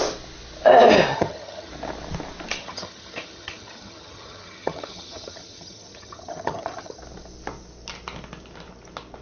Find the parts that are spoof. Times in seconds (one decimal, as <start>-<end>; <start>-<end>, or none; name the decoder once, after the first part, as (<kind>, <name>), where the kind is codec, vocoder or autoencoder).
1.1-1.7 (vocoder, HiFi-GAN); 2.6-7.0